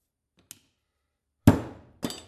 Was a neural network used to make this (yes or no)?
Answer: no